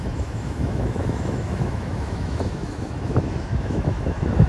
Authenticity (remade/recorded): remade